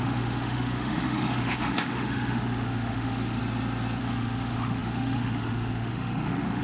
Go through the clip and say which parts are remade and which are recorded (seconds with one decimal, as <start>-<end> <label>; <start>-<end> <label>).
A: 0.0-3.4 remade; 3.4-4.0 recorded; 4.0-6.6 remade